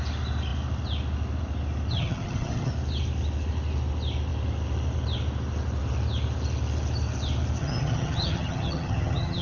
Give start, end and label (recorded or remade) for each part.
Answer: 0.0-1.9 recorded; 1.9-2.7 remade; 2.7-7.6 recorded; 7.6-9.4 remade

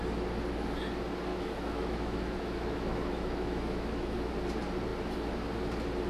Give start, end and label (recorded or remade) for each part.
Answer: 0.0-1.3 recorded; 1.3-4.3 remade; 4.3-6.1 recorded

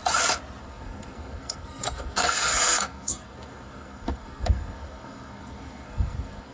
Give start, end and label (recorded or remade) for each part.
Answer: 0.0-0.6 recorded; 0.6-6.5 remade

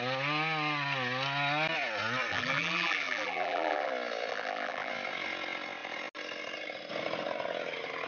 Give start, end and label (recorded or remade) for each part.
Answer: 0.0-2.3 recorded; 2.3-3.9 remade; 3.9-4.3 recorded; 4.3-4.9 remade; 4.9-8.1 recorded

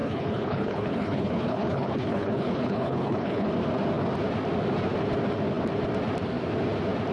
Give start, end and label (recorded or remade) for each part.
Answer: 0.0-3.5 remade; 3.5-7.1 recorded

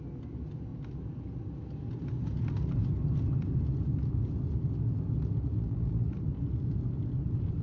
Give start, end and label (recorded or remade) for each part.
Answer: 0.0-5.5 recorded; 5.5-6.1 remade; 6.1-7.6 recorded

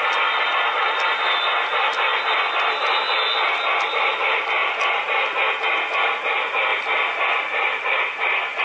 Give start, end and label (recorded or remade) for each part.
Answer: 0.0-6.7 recorded; 6.7-8.6 remade